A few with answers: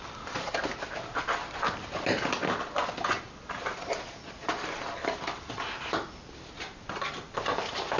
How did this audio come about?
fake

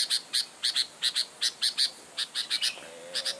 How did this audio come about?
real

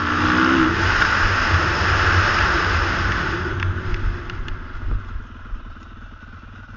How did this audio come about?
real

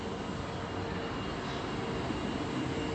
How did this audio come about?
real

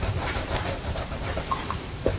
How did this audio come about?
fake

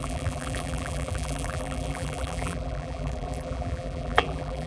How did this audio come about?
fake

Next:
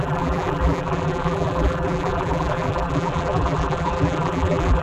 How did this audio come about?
fake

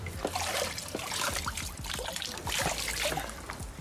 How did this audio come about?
fake